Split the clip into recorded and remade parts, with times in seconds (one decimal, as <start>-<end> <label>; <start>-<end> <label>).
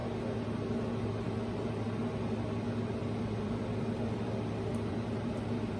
0.0-2.5 recorded; 2.5-5.8 remade